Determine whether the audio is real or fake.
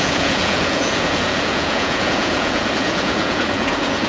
fake